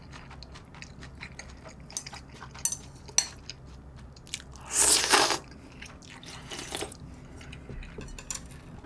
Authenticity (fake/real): real